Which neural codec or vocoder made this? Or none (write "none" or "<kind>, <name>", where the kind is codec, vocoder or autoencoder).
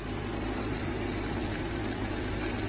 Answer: vocoder, BigVGAN v2